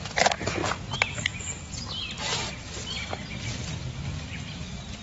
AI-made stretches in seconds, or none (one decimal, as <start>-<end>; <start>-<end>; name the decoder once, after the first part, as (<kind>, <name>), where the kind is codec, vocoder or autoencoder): none